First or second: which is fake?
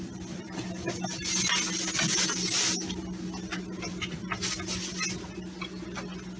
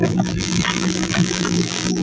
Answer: second